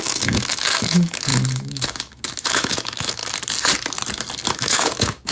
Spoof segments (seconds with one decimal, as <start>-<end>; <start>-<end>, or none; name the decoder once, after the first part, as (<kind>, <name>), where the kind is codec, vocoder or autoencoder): 0.0-3.2 (autoencoder, DAC-VAE); 4.5-5.3